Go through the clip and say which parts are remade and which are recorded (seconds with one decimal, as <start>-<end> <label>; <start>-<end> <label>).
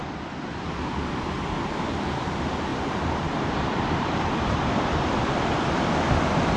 0.0-2.7 recorded; 2.7-4.7 remade; 4.7-6.6 recorded